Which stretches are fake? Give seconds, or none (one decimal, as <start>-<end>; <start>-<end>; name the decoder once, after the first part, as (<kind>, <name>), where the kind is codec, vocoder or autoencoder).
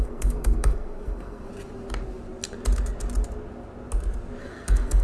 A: 0.0-1.5 (codec, SNAC); 4.4-5.0